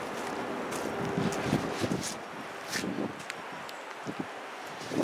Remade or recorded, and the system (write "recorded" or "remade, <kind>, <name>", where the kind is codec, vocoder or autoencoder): recorded